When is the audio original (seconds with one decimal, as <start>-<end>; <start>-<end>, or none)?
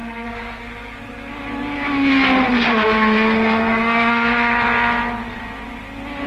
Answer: 0.6-2.7; 4.5-6.3